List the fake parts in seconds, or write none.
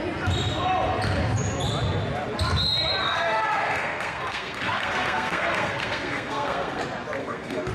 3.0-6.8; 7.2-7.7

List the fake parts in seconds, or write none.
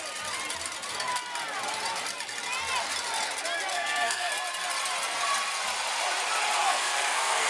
3.7-4.3; 6.6-7.5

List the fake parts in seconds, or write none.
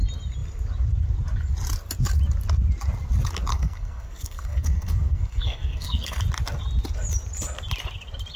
3.5-6.2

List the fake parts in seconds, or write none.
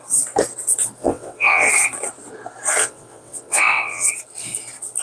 1.0-1.7; 2.8-4.1